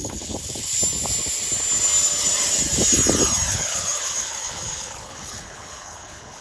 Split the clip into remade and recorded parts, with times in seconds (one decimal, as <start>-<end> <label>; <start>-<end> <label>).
0.0-0.8 remade; 0.8-3.5 recorded; 3.5-6.4 remade